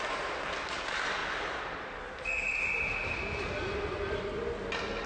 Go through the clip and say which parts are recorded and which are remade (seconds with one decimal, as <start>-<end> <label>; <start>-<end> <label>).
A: 0.0-5.1 recorded